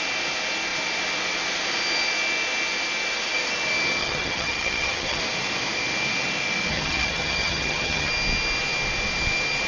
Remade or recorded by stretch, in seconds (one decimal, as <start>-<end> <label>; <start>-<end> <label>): 0.0-4.0 recorded; 4.0-5.2 remade; 5.2-6.7 recorded; 6.7-8.1 remade; 8.1-9.7 recorded